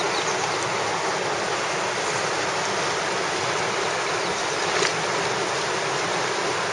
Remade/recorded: recorded